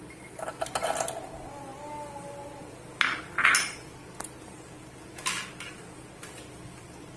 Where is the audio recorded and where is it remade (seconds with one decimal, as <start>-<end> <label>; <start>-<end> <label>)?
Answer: 0.0-7.2 recorded